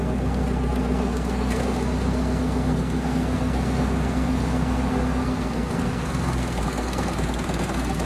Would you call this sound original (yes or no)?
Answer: no